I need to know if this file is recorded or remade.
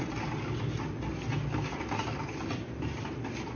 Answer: recorded